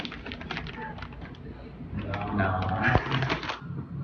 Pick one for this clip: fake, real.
real